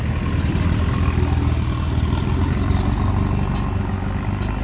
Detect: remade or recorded recorded